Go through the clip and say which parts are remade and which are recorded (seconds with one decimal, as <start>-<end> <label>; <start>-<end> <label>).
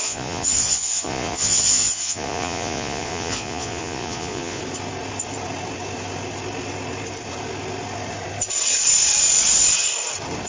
0.0-4.6 remade; 4.6-10.5 recorded